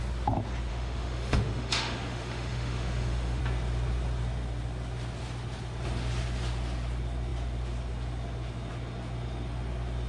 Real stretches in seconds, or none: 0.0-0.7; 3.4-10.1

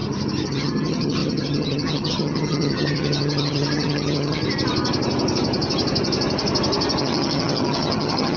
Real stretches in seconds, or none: 0.0-0.5; 4.4-7.0

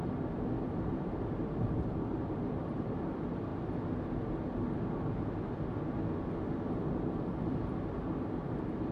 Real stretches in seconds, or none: 3.5-6.9

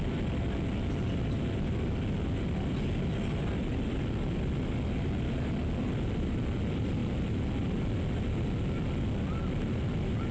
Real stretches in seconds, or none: 0.0-10.3

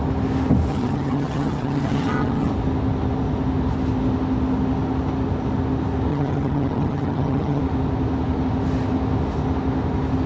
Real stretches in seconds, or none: 0.0-0.7; 2.5-6.1; 7.6-10.3

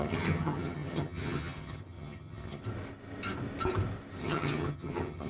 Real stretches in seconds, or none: 2.6-4.2

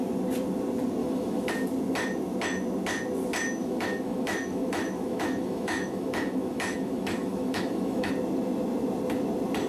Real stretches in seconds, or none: 0.0-1.0; 1.5-3.6; 8.1-9.7